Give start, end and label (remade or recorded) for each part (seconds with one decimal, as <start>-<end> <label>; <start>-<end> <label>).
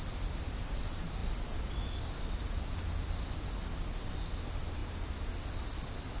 0.0-6.2 recorded